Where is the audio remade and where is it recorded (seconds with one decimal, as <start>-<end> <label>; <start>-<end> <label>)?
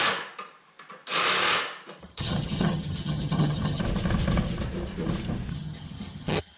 0.0-2.0 recorded; 2.0-3.8 remade; 3.8-5.5 recorded; 5.5-6.6 remade